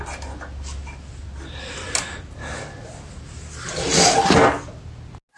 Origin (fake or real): real